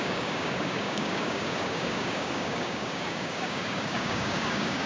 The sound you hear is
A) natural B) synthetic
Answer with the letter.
B